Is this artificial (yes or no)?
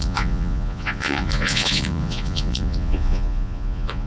yes